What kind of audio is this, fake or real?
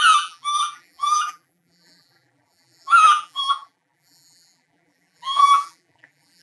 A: fake